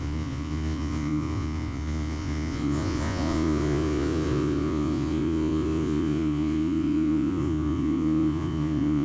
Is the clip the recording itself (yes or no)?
no